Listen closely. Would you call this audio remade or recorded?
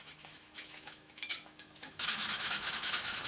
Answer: remade